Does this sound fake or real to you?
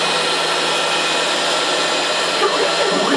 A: real